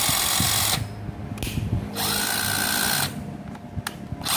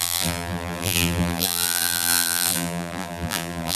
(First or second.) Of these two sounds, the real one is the first